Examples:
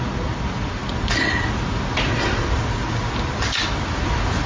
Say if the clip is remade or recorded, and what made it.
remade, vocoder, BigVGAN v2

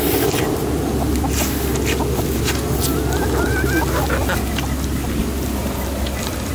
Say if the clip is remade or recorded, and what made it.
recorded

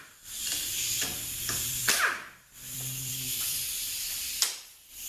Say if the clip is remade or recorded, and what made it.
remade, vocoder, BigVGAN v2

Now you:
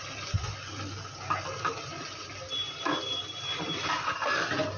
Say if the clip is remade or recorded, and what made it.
recorded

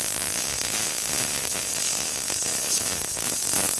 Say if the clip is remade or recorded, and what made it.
remade, codec, DAC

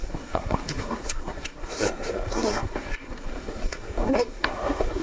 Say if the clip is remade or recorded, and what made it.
remade, codec, SNAC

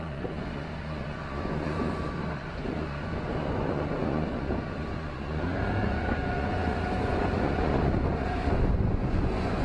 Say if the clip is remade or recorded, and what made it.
remade, vocoder, Vocos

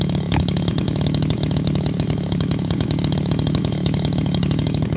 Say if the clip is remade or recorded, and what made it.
remade, autoencoder, DAC-VAE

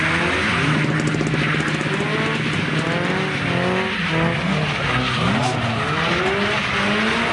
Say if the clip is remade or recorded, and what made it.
recorded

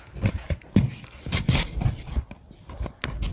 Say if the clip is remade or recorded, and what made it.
recorded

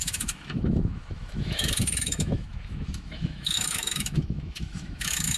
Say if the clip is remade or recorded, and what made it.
remade, autoencoder, DAC-VAE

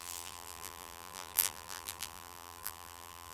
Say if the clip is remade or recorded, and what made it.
remade, vocoder, BigVGAN v2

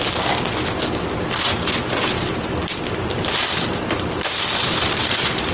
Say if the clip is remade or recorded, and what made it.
recorded